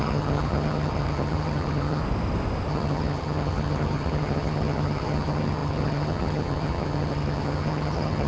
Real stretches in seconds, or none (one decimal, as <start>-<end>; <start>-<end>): 2.0-2.7